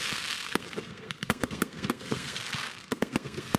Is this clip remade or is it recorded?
remade